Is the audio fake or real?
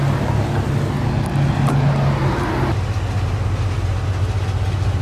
real